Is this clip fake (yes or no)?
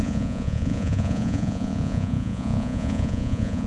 yes